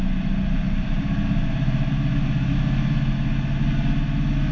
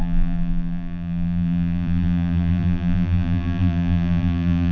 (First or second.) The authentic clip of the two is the first